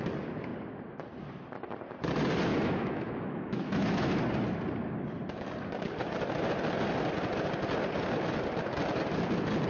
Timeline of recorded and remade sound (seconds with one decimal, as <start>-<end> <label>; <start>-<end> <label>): 0.0-2.5 recorded; 2.5-4.2 remade; 4.2-9.7 recorded